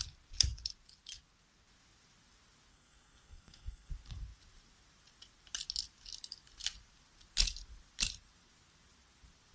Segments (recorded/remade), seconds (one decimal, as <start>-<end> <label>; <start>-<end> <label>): 0.0-2.7 recorded; 2.7-3.9 remade; 3.9-9.5 recorded